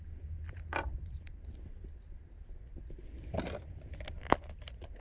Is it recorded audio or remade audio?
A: recorded